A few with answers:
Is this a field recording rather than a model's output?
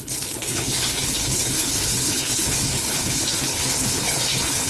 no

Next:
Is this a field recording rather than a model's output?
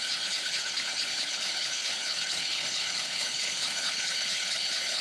no